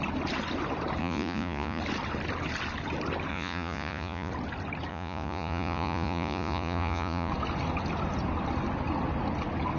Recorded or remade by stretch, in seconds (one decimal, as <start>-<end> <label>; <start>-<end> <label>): 0.0-1.0 recorded; 1.0-1.8 remade; 1.8-3.3 recorded; 3.3-4.3 remade; 4.3-4.9 recorded; 4.9-7.3 remade; 7.3-9.8 recorded